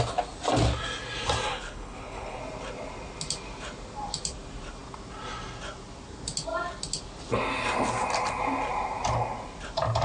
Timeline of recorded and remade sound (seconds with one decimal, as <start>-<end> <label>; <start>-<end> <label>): 0.0-1.5 recorded; 1.5-2.4 remade; 2.4-10.0 recorded